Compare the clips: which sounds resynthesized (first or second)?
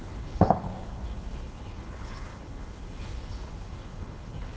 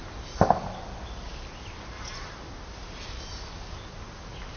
first